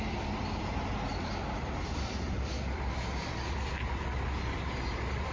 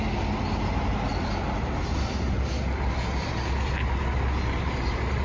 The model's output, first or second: first